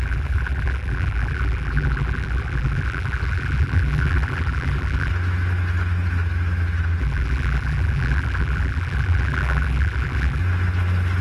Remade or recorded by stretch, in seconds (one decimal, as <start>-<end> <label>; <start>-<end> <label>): 0.0-5.1 remade; 5.1-7.0 recorded; 7.0-10.4 remade; 10.4-11.2 recorded